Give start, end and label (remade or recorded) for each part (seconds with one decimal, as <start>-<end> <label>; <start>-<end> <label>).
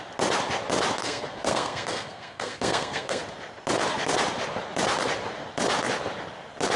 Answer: 0.0-1.0 recorded; 1.0-3.2 remade; 3.2-6.8 recorded